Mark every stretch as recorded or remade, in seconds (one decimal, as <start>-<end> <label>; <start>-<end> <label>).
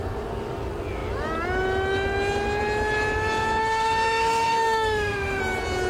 0.0-3.6 recorded; 3.6-5.4 remade; 5.4-5.9 recorded